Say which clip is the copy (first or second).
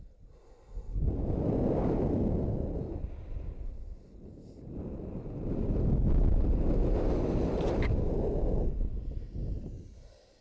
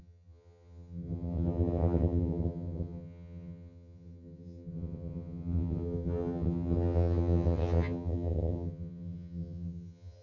second